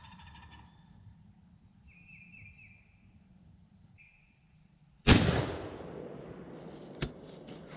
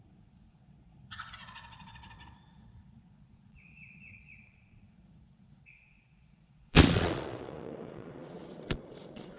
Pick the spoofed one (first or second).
second